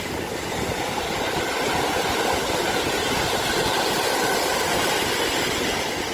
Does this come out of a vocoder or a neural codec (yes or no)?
no